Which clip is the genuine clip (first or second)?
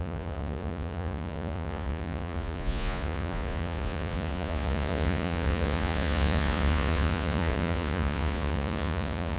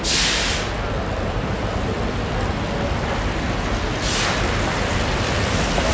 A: second